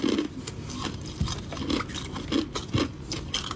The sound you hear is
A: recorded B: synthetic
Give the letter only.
A